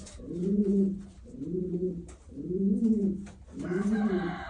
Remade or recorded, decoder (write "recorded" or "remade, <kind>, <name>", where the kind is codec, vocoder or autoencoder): remade, vocoder, BigVGAN v2